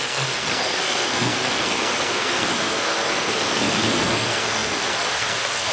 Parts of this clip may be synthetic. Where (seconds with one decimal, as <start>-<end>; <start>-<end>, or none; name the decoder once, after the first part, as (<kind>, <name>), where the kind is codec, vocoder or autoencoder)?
0.0-5.7 (codec, SNAC)